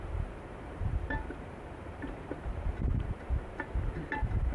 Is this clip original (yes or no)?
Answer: no